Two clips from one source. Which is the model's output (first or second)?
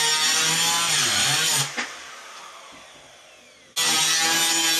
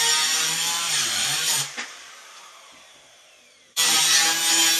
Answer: second